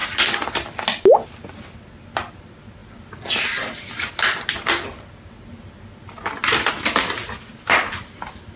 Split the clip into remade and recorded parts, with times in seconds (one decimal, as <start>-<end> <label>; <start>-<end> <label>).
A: 0.0-8.6 recorded